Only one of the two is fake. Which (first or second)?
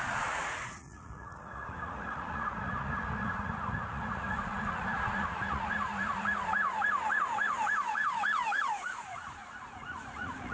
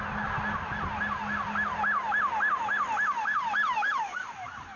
first